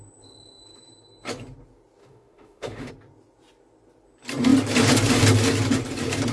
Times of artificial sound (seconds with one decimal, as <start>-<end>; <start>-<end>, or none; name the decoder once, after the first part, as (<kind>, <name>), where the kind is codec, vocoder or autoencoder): 2.0-2.9 (autoencoder, DAC-VAE)